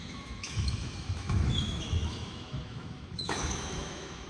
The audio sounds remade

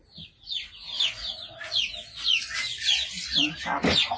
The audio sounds recorded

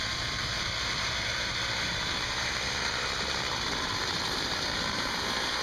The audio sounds remade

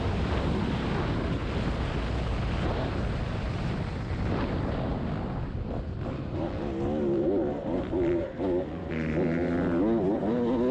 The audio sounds recorded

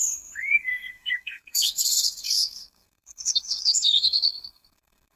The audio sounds remade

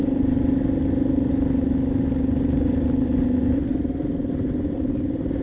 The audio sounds recorded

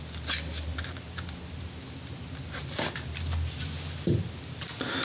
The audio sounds recorded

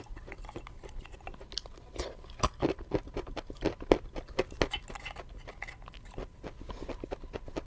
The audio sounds recorded